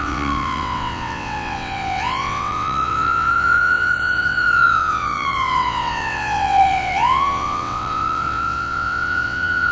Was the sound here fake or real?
fake